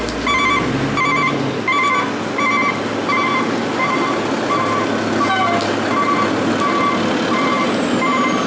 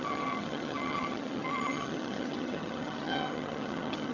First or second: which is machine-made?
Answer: second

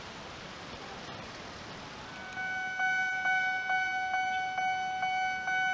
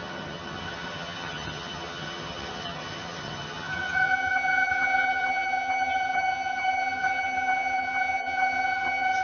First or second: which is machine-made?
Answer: second